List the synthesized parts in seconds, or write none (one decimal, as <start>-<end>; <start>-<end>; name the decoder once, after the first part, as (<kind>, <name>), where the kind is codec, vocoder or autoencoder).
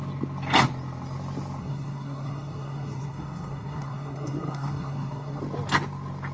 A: 1.6-5.4 (codec, SNAC)